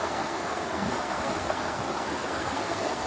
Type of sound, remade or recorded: remade